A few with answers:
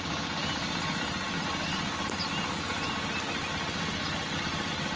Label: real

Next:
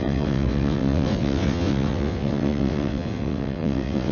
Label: fake